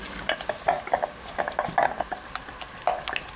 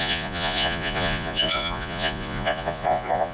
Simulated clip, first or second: second